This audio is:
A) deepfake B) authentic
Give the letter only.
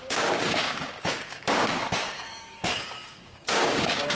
A